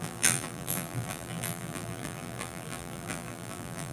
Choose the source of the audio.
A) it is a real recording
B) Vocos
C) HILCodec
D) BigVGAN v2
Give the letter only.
D